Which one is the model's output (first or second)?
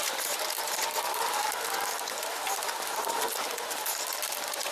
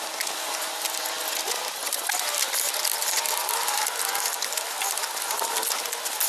first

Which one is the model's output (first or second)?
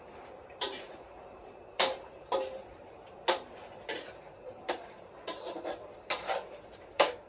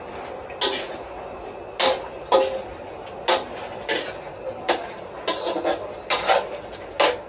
first